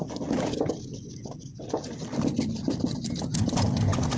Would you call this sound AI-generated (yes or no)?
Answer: no